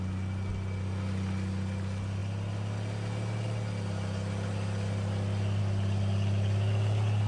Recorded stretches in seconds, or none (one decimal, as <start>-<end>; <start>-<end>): 0.0-7.3